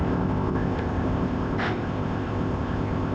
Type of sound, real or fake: fake